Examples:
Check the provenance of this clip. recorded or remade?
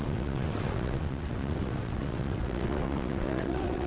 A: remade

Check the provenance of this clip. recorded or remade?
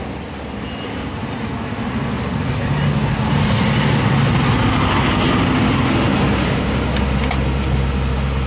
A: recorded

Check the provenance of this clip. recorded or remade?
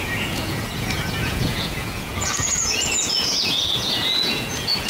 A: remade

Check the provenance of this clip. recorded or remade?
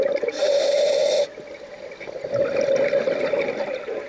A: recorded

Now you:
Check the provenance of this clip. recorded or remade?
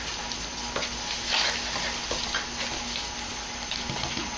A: recorded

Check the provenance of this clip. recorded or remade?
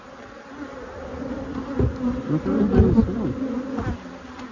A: recorded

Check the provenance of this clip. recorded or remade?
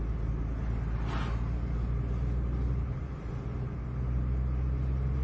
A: recorded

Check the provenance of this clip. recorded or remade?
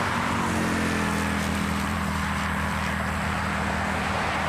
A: recorded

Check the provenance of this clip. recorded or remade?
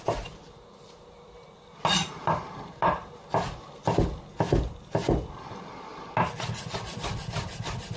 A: recorded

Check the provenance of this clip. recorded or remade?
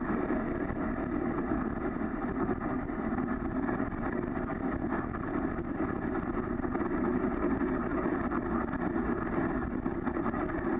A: recorded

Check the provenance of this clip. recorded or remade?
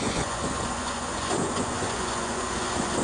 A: remade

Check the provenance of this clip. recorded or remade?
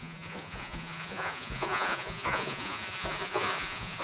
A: remade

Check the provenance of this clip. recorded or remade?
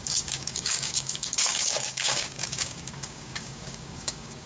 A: remade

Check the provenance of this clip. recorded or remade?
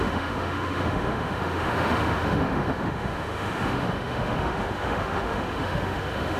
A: remade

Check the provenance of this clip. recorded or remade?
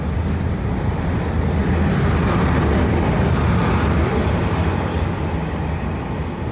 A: recorded